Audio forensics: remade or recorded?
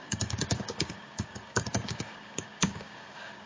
remade